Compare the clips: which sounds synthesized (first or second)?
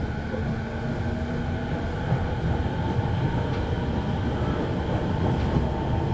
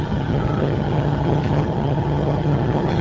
second